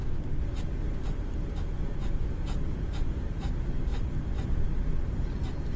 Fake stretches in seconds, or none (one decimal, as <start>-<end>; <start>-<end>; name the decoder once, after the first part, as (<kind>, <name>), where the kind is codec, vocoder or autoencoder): 2.2-3.5 (vocoder, Vocos)